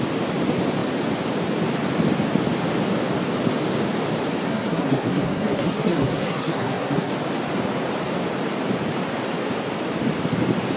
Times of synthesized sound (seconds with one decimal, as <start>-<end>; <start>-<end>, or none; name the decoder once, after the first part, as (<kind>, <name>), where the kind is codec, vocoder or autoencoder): 4.4-7.1 (codec, SNAC)